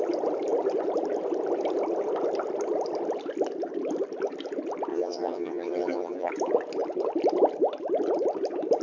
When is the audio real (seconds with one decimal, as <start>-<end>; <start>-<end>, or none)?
0.0-4.9; 6.3-8.8

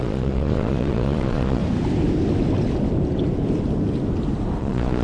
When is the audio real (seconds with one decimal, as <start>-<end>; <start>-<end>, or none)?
1.6-4.6

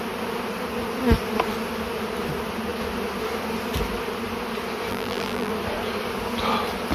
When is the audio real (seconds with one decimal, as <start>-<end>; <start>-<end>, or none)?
0.0-4.9; 5.5-6.9

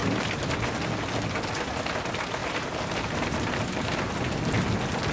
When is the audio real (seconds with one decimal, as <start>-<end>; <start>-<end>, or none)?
0.0-2.4; 4.1-5.1

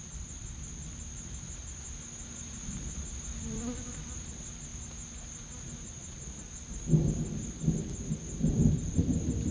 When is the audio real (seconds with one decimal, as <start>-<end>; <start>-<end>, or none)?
0.8-1.5; 4.7-8.5

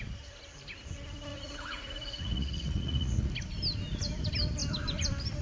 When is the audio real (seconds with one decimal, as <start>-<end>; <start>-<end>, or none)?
0.0-1.3; 3.3-5.4